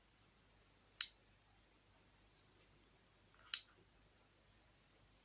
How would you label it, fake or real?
real